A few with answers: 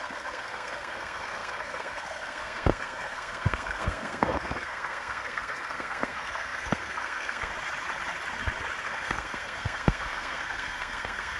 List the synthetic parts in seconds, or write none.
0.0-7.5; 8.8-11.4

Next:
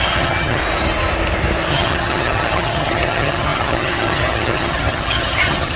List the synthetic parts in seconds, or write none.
0.0-0.6; 1.7-5.8